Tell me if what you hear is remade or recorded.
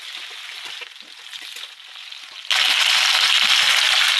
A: recorded